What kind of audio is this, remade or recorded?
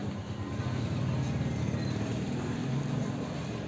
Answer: remade